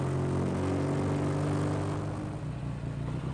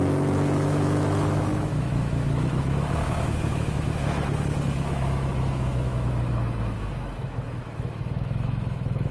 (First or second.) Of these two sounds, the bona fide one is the first